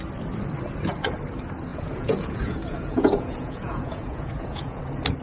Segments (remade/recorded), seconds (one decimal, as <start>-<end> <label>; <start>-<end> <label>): 0.0-1.7 recorded; 1.7-4.8 remade; 4.8-5.2 recorded